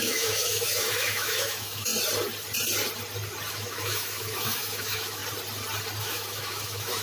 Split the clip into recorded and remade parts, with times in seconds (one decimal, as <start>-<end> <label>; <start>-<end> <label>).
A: 0.0-1.9 remade; 1.9-3.5 recorded; 3.5-5.2 remade; 5.2-6.0 recorded; 6.0-7.0 remade